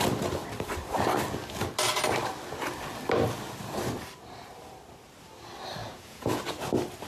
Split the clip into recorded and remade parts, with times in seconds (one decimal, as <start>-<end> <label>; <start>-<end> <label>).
0.0-5.8 recorded; 5.8-6.4 remade; 6.4-7.1 recorded